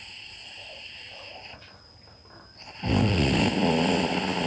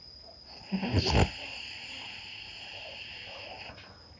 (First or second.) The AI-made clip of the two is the first